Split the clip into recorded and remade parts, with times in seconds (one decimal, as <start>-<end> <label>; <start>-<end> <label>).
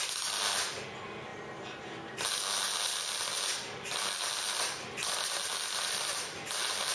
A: 0.0-6.9 recorded